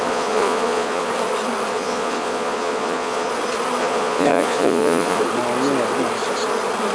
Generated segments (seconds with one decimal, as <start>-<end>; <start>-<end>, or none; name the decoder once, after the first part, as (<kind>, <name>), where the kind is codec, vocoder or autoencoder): 0.0-1.1 (vocoder, Vocos); 1.7-3.3; 3.8-5.2